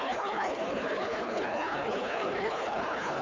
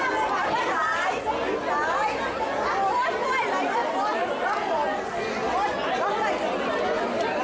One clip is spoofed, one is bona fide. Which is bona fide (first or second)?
second